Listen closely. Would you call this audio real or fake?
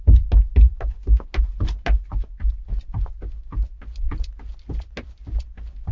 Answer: real